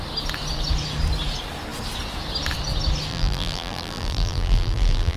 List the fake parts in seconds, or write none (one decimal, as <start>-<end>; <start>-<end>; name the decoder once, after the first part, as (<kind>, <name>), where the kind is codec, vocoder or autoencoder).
3.1-5.2 (vocoder, BigVGAN v2)